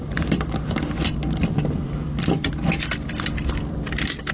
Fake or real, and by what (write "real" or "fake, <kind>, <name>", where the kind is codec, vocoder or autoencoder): fake, vocoder, BigVGAN v2